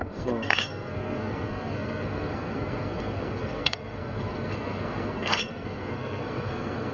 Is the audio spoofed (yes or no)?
yes